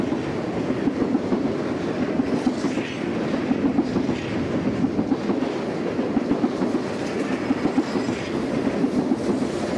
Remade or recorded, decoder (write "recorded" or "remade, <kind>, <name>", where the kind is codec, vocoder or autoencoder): recorded